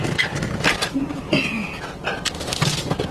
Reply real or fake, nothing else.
real